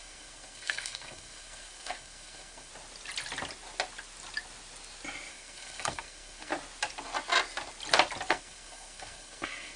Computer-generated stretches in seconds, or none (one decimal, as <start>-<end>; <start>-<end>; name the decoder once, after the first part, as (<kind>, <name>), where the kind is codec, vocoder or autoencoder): 0.0-2.7 (codec, SNAC); 5.3-6.5; 8.3-9.8